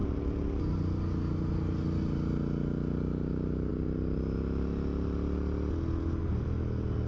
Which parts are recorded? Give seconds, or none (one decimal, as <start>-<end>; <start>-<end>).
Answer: 0.0-7.1